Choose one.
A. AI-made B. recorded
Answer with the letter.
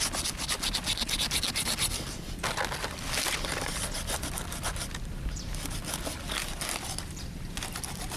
B